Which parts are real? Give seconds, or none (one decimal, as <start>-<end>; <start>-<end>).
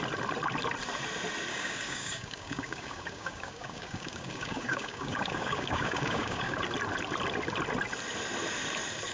0.0-1.5; 6.6-9.1